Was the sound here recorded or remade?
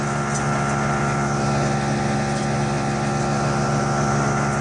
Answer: recorded